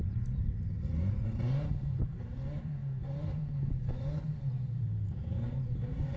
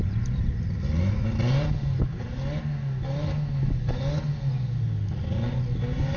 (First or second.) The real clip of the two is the second